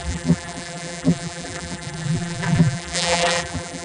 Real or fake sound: fake